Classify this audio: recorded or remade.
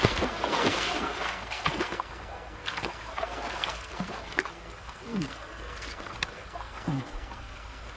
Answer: remade